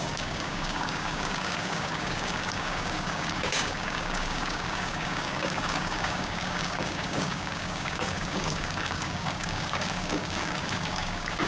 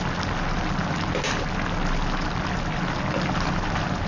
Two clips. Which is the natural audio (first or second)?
second